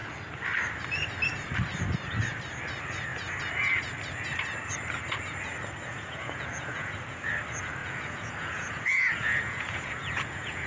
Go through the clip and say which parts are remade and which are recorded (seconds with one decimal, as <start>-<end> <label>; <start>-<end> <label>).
0.0-5.9 recorded; 5.9-7.3 remade; 7.3-7.8 recorded; 7.8-10.7 remade